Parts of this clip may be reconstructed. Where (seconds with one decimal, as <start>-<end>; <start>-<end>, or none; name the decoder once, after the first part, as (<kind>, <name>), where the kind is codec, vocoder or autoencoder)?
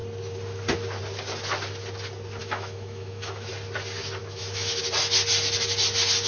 2.4-3.5 (autoencoder, DAC-VAE); 4.2-4.8